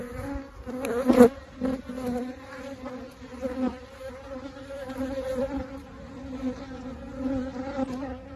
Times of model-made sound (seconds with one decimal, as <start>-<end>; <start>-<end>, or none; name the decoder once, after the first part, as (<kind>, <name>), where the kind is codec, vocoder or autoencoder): none